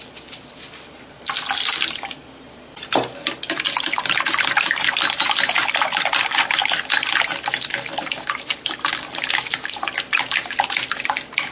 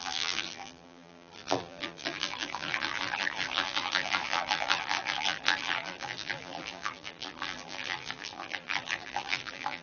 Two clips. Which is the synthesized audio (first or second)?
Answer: second